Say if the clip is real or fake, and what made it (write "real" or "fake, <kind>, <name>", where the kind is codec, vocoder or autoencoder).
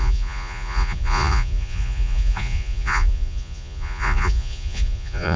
fake, vocoder, Vocos